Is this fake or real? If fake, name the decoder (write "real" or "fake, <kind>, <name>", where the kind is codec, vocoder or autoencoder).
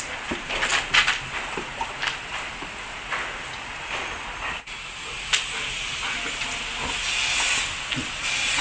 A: real